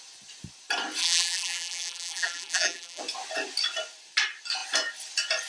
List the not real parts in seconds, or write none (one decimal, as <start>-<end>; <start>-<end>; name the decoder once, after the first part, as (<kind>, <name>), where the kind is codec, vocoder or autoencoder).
1.0-3.0 (vocoder, BigVGAN v2)